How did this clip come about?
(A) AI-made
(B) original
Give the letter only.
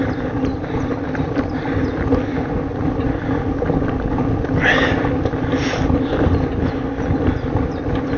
B